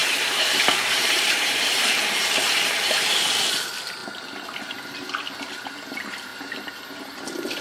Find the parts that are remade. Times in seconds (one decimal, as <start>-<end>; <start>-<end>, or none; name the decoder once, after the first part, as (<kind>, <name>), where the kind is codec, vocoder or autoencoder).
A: 0.0-3.4 (vocoder, BigVGAN v2)